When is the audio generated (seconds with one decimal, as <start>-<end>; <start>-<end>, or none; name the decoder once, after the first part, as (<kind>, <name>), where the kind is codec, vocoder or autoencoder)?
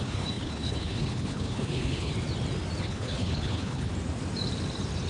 0.0-2.1 (codec, HILCodec); 2.8-3.9